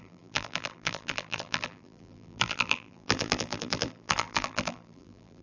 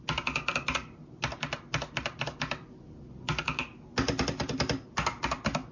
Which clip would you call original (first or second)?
second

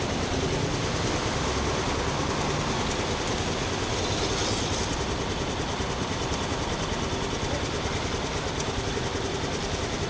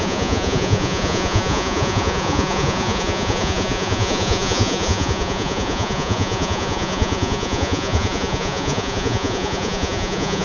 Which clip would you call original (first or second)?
first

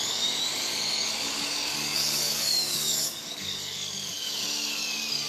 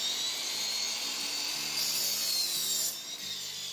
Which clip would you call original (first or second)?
second